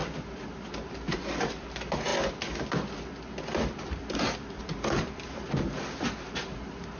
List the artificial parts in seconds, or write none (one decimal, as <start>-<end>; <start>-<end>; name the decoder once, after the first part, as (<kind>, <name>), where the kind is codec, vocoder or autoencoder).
0.0-7.0 (vocoder, BigVGAN v2)